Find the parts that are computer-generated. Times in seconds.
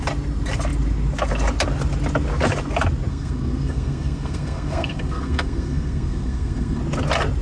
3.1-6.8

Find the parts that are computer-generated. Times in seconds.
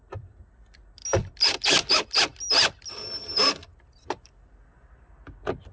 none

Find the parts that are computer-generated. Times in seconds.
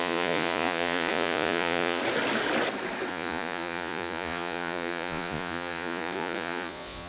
0.0-2.0; 3.1-7.1